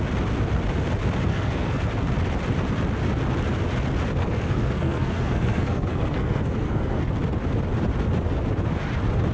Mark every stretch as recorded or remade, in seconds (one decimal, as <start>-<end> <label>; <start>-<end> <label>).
0.0-1.3 recorded; 1.3-1.8 remade; 1.8-4.2 recorded; 4.2-7.1 remade; 7.1-9.3 recorded